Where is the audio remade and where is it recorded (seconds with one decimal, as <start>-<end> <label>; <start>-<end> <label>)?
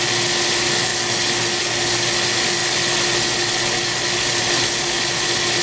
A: 0.0-5.6 recorded